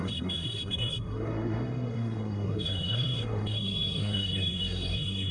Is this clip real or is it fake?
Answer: fake